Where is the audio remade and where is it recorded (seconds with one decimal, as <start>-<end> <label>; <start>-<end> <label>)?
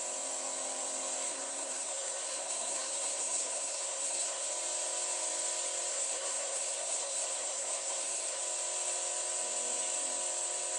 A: 0.0-1.3 recorded; 1.3-4.5 remade; 4.5-5.9 recorded; 5.9-8.4 remade; 8.4-10.8 recorded